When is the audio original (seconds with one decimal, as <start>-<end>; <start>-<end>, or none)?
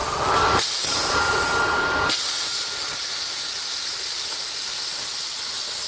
1.5-2.4